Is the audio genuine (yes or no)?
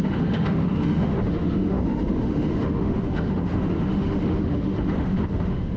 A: no